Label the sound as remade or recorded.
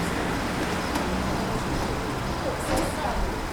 recorded